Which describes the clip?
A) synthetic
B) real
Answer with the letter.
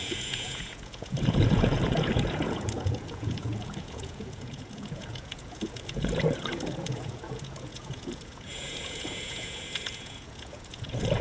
A